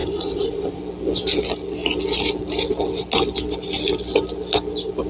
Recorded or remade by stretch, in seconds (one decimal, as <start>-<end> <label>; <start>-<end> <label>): 0.0-0.8 remade; 0.8-5.1 recorded